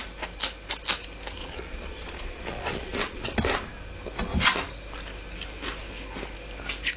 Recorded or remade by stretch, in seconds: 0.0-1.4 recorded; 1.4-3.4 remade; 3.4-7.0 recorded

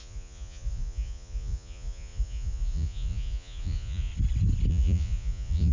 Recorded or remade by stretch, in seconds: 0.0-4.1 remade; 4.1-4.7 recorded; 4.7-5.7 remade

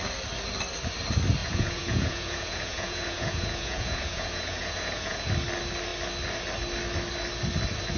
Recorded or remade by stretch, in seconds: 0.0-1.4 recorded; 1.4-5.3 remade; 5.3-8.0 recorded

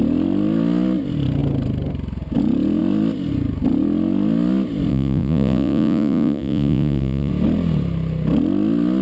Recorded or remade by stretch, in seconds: 0.0-4.9 recorded; 4.9-7.3 remade; 7.3-9.0 recorded